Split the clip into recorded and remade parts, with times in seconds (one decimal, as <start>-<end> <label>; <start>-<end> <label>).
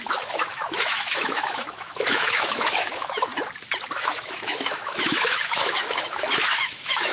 0.0-3.3 remade; 3.3-3.9 recorded; 3.9-7.1 remade